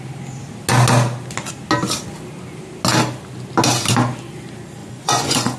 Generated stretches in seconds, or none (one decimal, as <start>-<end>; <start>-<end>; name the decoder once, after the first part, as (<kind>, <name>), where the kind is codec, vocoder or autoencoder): 4.8-5.6 (vocoder, Vocos)